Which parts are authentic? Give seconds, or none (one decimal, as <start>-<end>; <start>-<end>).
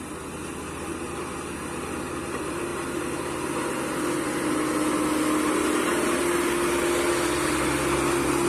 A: 0.0-8.5